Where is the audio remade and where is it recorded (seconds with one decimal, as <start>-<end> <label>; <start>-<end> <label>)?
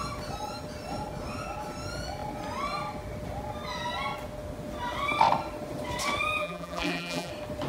0.0-6.4 recorded; 6.4-7.3 remade; 7.3-7.7 recorded